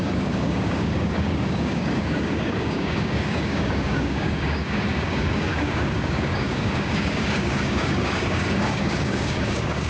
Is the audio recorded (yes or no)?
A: no